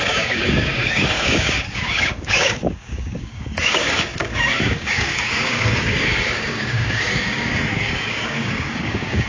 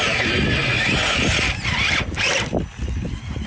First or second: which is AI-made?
first